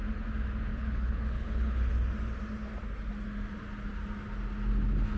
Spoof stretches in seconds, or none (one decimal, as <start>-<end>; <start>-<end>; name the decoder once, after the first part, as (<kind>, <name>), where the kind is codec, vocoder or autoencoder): 0.7-1.9 (codec, HILCodec)

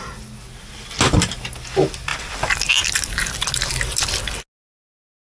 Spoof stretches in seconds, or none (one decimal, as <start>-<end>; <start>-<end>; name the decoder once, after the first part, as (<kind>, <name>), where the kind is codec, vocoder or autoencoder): none

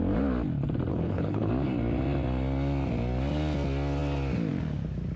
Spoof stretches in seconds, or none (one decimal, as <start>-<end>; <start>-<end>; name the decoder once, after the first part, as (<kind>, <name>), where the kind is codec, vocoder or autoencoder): 0.9-1.5 (codec, HILCodec)